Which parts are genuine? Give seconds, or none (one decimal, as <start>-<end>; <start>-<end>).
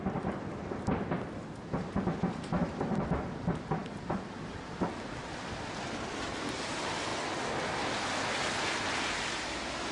0.0-9.9